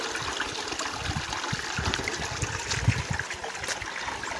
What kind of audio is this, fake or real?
real